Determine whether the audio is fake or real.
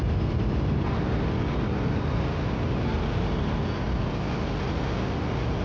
real